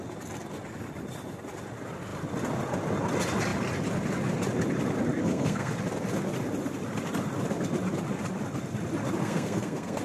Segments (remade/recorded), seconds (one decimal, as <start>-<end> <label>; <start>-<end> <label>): 0.0-5.2 recorded; 5.2-5.7 remade; 5.7-9.2 recorded; 9.2-10.0 remade